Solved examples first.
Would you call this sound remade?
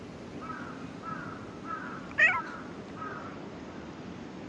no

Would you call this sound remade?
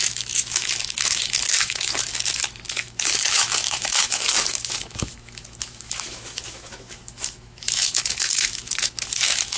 yes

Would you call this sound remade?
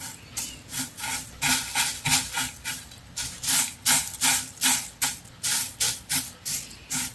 no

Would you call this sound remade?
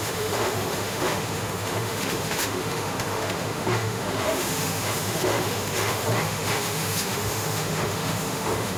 yes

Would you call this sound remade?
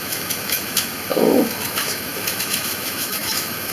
yes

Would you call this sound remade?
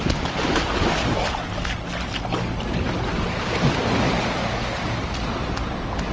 no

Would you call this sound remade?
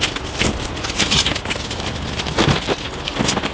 no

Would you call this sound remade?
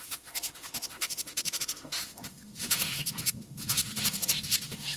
yes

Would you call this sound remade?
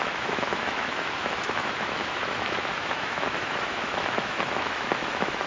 yes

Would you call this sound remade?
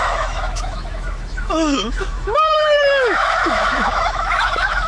yes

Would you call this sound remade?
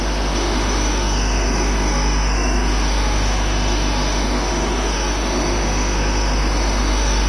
yes